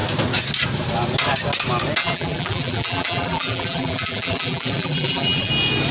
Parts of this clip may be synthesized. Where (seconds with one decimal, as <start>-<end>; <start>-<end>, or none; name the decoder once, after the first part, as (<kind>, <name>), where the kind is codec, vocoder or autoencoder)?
2.0-5.5 (vocoder, BigVGAN v2)

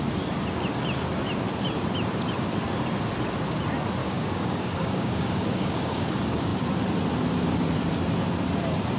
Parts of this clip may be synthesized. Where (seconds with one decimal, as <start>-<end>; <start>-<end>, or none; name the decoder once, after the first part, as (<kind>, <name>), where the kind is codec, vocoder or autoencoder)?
4.0-6.1 (codec, DAC)

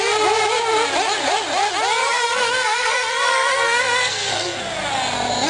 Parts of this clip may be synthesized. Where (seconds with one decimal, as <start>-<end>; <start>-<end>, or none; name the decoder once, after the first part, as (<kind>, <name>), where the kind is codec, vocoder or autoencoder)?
2.0-4.6 (codec, SNAC)

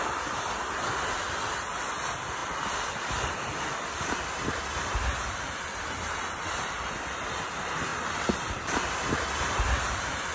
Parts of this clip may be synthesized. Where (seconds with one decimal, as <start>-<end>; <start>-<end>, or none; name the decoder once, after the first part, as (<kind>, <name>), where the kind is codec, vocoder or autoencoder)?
none

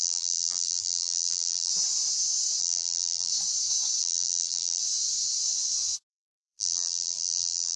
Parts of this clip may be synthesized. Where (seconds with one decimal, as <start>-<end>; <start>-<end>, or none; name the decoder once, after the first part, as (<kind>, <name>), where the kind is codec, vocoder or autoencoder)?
0.0-1.7 (vocoder, BigVGAN v2); 2.6-3.3; 4.0-4.8; 6.1-7.8